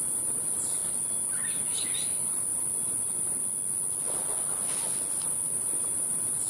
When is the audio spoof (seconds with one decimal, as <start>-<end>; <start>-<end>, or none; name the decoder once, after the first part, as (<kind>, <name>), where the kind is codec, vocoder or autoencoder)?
none